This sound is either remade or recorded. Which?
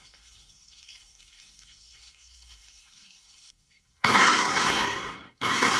remade